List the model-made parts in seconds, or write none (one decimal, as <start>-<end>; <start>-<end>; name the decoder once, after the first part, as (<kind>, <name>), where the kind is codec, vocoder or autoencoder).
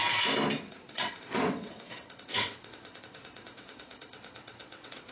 0.7-5.1 (vocoder, WaveNeXt)